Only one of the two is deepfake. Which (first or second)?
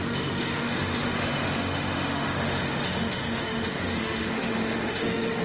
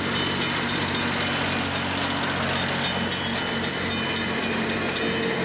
first